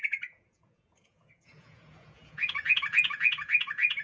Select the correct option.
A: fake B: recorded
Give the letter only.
A